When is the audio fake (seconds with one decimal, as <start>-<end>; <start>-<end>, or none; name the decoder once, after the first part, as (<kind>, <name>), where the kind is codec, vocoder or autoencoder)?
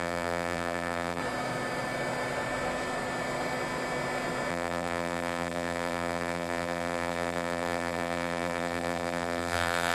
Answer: 0.0-1.2 (vocoder, BigVGAN v2); 4.5-9.9